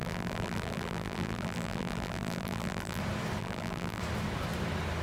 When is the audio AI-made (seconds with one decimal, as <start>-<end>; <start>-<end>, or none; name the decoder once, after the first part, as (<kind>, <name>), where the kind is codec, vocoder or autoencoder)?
0.0-3.0 (vocoder, BigVGAN v2); 3.4-4.0